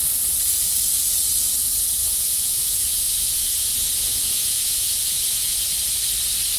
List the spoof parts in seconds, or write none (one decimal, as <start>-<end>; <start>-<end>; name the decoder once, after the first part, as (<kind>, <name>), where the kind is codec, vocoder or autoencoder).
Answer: 2.0-5.6 (vocoder, Vocos)